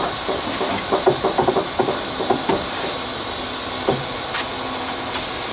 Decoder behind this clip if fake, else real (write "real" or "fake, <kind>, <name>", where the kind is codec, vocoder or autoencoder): real